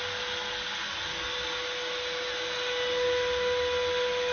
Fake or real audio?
real